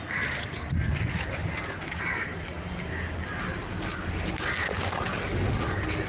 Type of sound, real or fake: real